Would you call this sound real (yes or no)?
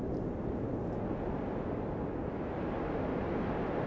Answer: yes